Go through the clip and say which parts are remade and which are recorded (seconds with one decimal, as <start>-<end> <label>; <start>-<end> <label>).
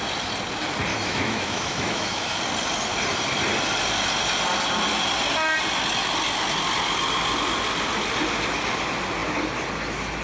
0.0-0.9 recorded; 0.9-2.4 remade; 2.4-10.2 recorded